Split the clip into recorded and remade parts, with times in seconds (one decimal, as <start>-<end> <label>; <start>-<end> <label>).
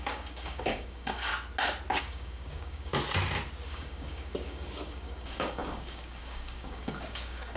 0.0-1.3 remade; 1.3-2.0 recorded; 2.0-2.9 remade; 2.9-3.7 recorded; 3.7-7.6 remade